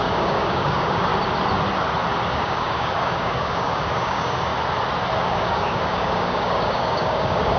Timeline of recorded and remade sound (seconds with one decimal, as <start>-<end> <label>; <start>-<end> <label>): 0.0-1.1 remade; 1.1-2.3 recorded; 2.3-4.5 remade; 4.5-5.2 recorded; 5.2-7.6 remade